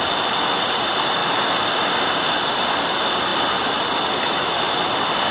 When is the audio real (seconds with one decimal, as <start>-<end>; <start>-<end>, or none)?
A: 0.0-5.3